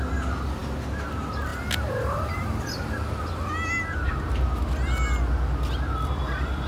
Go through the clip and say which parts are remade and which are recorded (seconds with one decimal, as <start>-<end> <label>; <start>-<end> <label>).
0.0-6.7 recorded